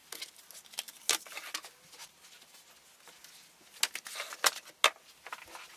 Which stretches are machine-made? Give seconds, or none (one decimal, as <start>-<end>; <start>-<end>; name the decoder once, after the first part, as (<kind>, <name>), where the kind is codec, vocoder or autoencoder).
none